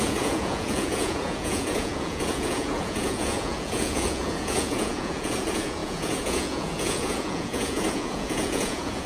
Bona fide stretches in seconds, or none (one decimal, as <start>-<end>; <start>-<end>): none